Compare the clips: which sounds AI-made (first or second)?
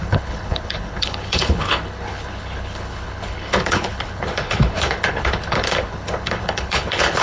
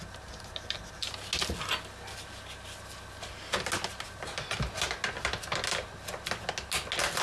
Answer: first